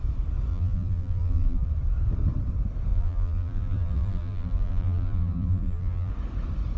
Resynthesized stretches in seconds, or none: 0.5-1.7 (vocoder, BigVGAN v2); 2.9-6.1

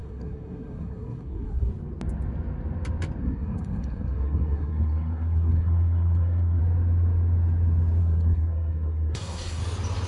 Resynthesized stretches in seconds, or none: 0.0-1.7 (codec, SNAC); 3.2-6.6; 8.0-9.6

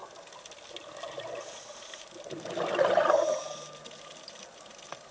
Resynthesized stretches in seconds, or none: none